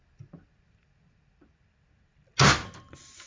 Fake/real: real